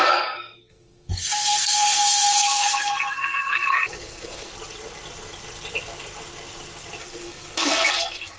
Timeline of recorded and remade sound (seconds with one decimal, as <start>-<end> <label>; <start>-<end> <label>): 0.0-4.5 remade; 4.5-7.0 recorded; 7.0-8.4 remade